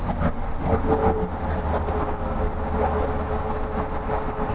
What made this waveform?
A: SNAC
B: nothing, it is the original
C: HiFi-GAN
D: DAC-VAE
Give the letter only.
B